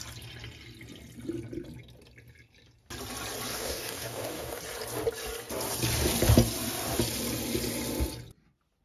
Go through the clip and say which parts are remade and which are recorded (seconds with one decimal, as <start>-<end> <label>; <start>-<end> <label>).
0.0-3.5 recorded; 3.5-4.6 remade; 4.6-8.8 recorded

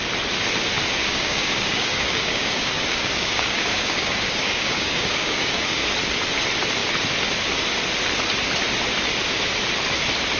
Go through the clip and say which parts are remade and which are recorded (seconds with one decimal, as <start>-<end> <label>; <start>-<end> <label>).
0.0-1.0 recorded; 1.0-5.8 remade; 5.8-10.4 recorded

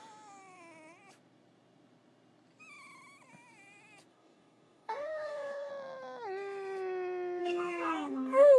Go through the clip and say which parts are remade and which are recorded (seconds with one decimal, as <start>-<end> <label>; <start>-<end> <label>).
0.0-4.1 recorded; 4.1-5.7 remade; 5.7-7.4 recorded; 7.4-8.6 remade